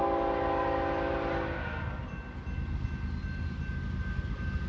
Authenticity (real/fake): real